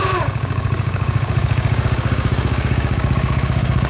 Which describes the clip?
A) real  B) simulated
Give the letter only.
B